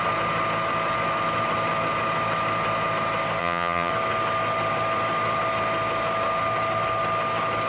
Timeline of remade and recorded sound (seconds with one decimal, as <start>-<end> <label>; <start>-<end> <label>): 0.0-3.4 recorded; 3.4-3.9 remade; 3.9-7.7 recorded